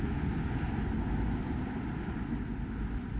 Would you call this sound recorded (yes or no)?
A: yes